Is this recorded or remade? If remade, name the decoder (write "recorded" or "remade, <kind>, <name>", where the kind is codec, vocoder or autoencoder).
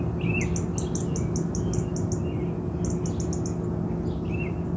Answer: recorded